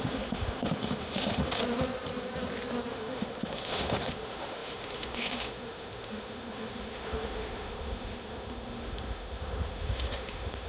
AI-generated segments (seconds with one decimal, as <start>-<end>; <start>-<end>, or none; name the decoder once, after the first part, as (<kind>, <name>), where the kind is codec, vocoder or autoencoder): 0.0-1.6 (autoencoder, DAC-VAE); 2.9-10.7